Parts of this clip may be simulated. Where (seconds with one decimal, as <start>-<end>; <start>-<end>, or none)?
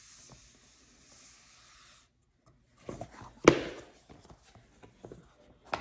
none